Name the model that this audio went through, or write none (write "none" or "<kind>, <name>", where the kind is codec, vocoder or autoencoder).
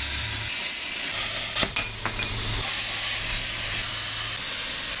none